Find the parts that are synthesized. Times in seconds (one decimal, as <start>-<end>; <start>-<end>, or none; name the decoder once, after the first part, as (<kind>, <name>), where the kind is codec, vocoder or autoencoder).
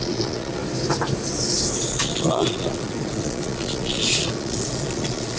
0.0-0.6 (vocoder, Vocos); 1.8-5.4